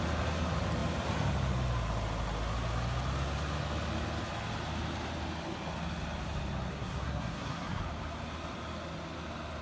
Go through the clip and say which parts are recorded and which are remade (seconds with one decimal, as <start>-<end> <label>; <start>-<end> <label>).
0.0-6.7 recorded; 6.7-7.8 remade; 7.8-9.6 recorded